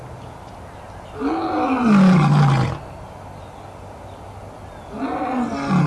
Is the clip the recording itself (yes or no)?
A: yes